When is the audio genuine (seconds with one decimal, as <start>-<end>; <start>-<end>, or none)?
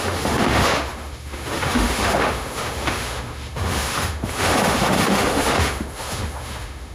none